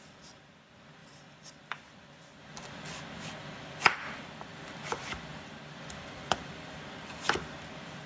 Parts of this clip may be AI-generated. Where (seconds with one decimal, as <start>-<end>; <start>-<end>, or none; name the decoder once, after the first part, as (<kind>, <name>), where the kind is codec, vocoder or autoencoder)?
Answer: 0.0-1.0 (vocoder, BigVGAN v2); 4.7-5.3; 6.0-8.1